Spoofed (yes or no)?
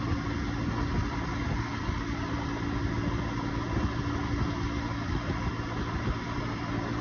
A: no